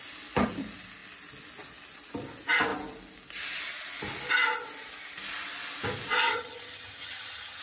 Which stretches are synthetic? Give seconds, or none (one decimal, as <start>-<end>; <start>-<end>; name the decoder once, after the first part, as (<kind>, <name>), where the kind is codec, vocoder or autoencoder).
6.3-7.6 (vocoder, HiFi-GAN)